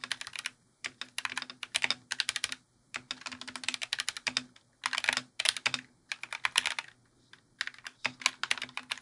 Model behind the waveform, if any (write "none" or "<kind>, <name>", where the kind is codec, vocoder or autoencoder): none